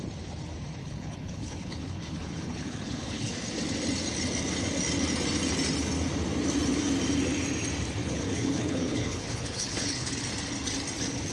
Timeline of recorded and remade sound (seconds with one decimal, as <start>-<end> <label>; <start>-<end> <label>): 0.0-0.8 recorded; 0.8-3.3 remade; 3.3-8.0 recorded; 8.0-10.2 remade; 10.2-11.3 recorded